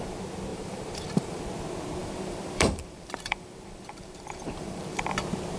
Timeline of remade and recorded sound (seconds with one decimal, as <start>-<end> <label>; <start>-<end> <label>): 0.0-0.5 recorded; 0.5-1.4 remade; 1.4-2.0 recorded; 2.0-5.0 remade; 5.0-5.6 recorded